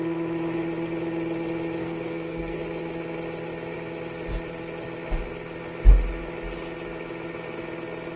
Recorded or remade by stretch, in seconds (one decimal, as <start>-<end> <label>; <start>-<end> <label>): 0.0-1.8 recorded; 1.8-2.6 remade; 2.6-8.2 recorded